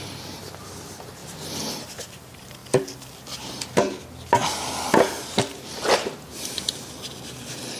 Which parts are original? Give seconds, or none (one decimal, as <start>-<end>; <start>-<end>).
0.0-7.8